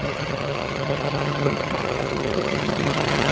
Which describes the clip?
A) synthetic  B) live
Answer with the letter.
A